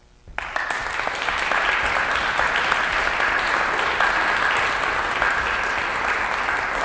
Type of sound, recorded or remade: recorded